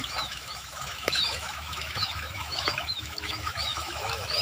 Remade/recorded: remade